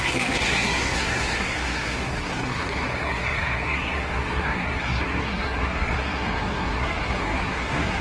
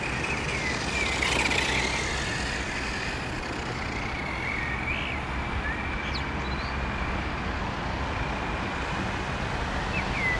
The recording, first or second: second